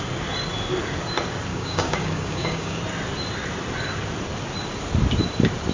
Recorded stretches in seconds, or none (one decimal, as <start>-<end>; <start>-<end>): 0.0-1.5; 2.8-5.7